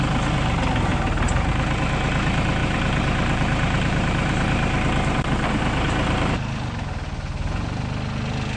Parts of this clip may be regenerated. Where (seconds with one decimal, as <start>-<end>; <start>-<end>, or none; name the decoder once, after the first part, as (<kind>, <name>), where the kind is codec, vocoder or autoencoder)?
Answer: 0.9-1.5 (vocoder, BigVGAN v2); 2.6-6.3